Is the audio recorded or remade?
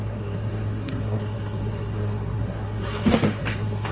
remade